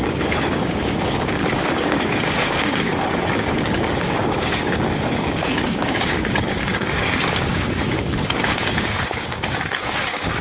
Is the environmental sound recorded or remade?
remade